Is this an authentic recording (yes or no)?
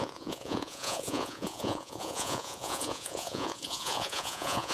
no